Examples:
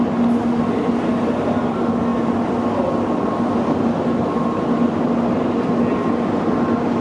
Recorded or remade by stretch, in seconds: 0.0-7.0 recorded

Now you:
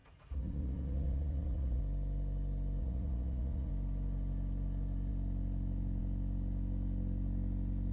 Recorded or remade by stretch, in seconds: 0.0-1.8 remade; 1.8-2.8 recorded; 2.8-3.7 remade; 3.7-7.9 recorded

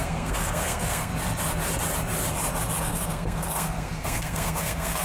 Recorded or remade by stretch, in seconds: 0.0-1.1 remade; 1.1-2.8 recorded; 2.8-5.0 remade

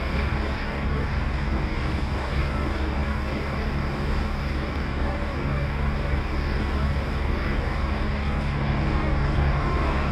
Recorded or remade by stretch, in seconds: 0.0-10.1 remade

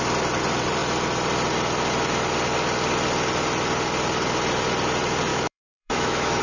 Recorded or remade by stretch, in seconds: 0.0-5.3 recorded; 5.3-6.4 remade